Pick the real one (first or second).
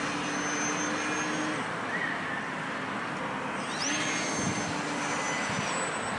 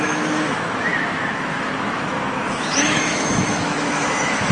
first